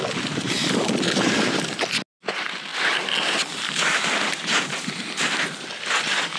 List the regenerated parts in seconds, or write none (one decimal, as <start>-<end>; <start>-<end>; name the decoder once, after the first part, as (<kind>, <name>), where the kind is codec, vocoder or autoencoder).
none